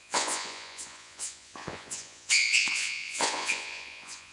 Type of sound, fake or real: fake